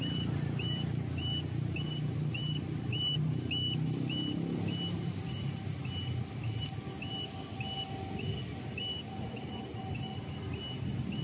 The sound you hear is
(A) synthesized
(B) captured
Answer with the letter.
B